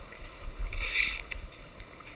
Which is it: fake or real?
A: fake